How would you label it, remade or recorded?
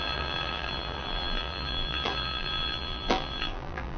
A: remade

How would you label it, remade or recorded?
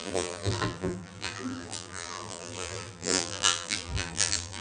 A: remade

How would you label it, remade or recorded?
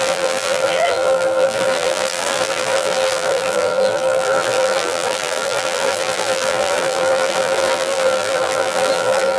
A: remade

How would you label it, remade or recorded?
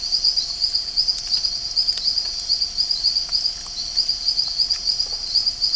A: recorded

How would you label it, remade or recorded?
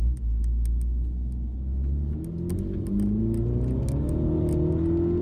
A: recorded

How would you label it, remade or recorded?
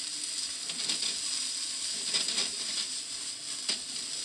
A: recorded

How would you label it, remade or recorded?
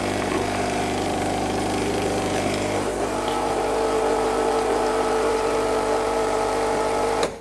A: remade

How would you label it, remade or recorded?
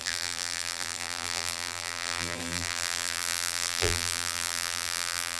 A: remade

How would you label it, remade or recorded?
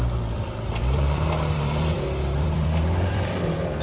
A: remade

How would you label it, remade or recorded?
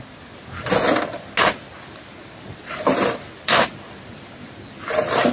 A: recorded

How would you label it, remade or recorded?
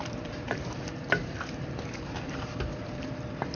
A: remade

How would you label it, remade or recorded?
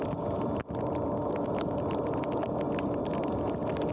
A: recorded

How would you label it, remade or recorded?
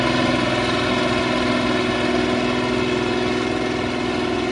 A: recorded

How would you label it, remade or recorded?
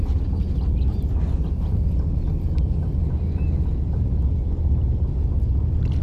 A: recorded